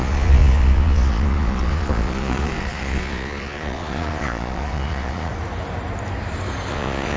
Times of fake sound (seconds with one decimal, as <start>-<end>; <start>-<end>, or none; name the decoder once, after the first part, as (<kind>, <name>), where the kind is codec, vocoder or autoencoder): 0.0-5.3 (vocoder, Vocos); 6.7-7.2